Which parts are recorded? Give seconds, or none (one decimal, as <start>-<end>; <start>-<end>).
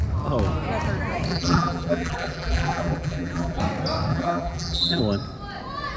0.0-1.3; 3.6-4.1; 5.0-6.0